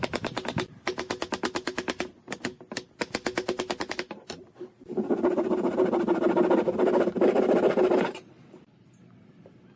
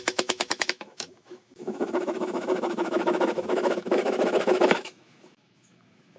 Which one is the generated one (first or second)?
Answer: second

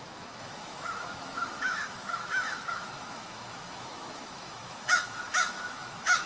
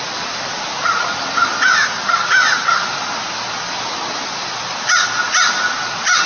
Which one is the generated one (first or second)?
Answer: first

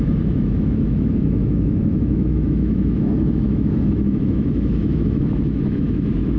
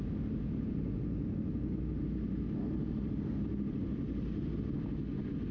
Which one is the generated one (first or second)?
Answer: first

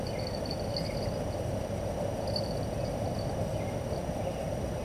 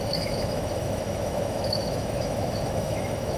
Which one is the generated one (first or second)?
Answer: second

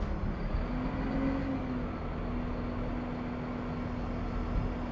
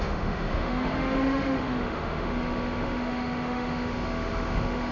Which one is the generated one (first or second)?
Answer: second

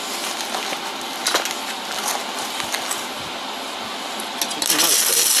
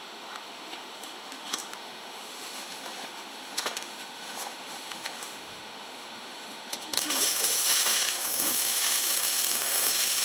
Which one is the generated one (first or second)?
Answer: second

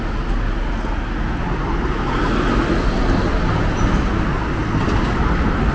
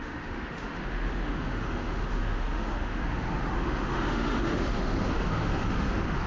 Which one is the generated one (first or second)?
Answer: second